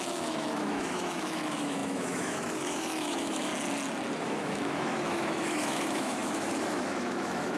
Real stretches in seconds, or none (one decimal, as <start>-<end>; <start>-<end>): 3.5-4.2